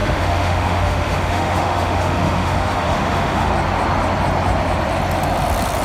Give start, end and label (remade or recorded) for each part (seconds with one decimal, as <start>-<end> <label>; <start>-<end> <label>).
0.0-3.5 remade; 3.5-5.8 recorded